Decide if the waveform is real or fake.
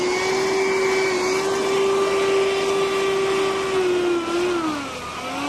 real